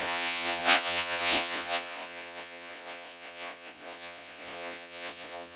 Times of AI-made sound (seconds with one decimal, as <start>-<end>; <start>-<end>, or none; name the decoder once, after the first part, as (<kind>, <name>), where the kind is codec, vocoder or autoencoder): 0.0-5.6 (vocoder, Vocos)